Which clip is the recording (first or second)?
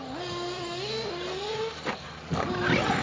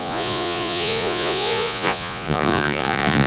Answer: first